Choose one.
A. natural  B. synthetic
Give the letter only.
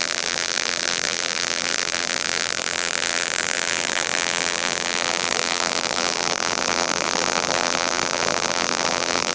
B